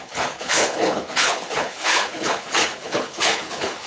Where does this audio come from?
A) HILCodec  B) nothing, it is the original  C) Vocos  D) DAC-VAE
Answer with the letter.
A